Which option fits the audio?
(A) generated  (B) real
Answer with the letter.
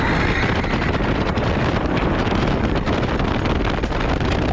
B